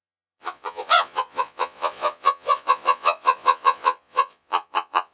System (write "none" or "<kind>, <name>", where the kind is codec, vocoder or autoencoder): vocoder, Vocos